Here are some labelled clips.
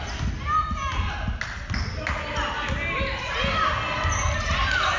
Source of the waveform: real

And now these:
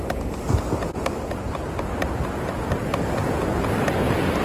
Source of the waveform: real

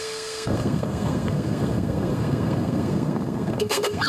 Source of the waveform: fake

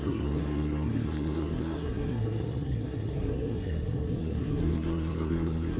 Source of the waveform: fake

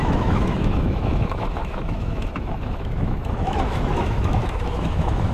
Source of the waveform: fake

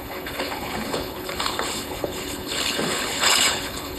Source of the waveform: fake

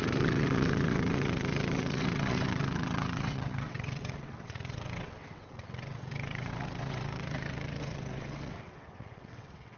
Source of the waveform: fake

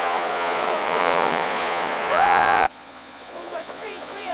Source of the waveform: fake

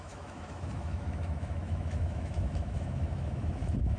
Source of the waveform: fake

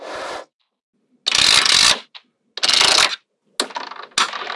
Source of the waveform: real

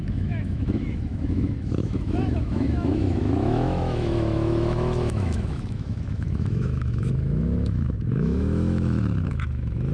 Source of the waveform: fake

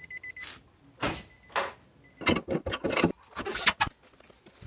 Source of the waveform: real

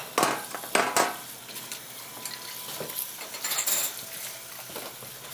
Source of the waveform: real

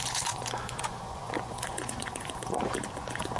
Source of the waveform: fake